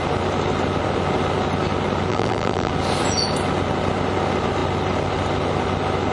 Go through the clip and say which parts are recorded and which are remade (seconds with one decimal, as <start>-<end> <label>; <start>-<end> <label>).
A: 0.0-2.1 recorded; 2.1-2.7 remade; 2.7-6.1 recorded